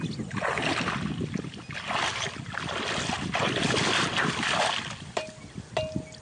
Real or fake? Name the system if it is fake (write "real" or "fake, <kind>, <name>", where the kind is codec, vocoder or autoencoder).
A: real